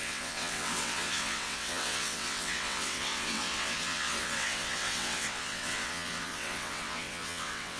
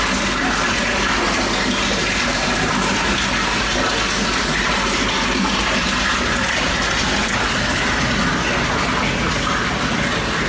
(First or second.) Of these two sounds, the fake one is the first